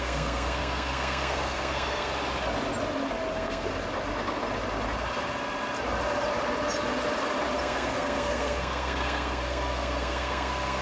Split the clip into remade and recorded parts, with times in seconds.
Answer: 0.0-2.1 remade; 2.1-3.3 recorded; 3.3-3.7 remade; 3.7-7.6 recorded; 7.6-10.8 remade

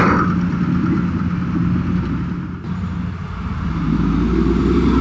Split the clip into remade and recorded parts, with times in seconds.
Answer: 0.0-5.0 recorded

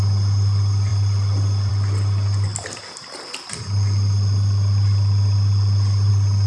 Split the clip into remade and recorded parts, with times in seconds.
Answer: 0.0-6.5 recorded

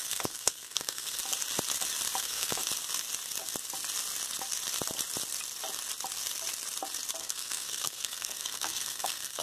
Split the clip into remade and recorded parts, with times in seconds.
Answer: 0.0-1.2 remade; 1.2-2.2 recorded; 2.2-2.6 remade; 2.6-7.2 recorded; 7.2-9.4 remade

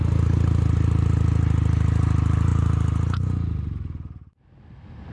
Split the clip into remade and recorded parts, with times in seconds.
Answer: 0.0-5.1 recorded